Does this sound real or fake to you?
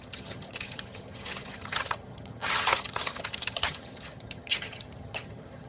fake